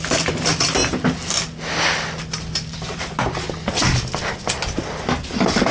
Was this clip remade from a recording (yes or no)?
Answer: no